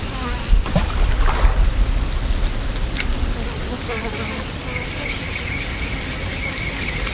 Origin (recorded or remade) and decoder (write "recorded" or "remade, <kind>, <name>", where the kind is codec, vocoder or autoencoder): recorded